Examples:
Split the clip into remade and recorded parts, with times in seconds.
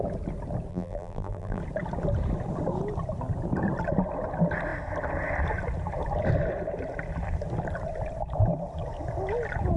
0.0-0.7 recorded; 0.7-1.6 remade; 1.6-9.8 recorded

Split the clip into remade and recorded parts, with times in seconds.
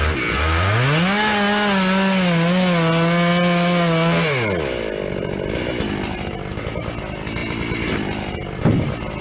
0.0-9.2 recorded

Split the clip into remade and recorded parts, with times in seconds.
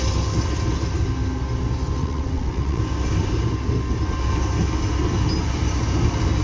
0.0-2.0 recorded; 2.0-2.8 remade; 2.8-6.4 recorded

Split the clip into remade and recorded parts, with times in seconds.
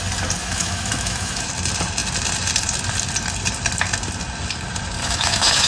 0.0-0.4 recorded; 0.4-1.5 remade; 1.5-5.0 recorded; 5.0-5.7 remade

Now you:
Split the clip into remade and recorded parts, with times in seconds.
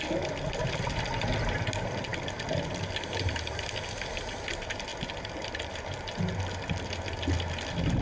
0.0-8.0 recorded